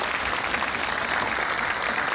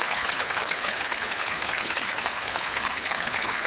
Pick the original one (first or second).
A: first